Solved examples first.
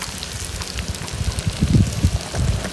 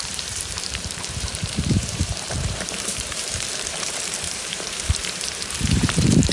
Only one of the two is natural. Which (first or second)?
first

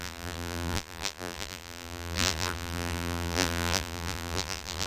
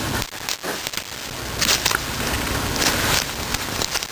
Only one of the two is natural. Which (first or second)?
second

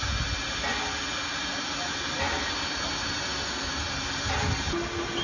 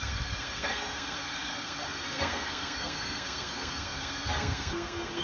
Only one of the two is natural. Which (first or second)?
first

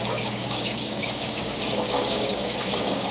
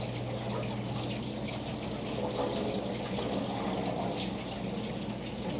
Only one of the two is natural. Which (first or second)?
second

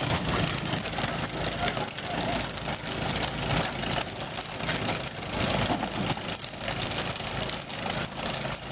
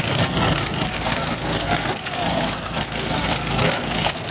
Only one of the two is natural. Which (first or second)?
first